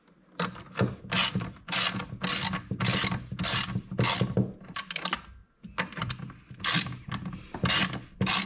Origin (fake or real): real